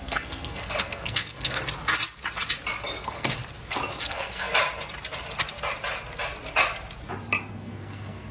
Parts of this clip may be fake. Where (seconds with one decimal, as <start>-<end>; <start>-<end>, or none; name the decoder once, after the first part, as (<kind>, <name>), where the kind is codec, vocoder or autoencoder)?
0.0-1.6 (codec, SNAC); 3.0-3.4; 4.0-4.5; 7.5-8.3